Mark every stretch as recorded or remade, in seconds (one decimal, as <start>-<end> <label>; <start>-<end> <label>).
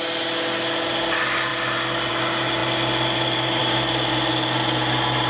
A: 0.0-5.3 recorded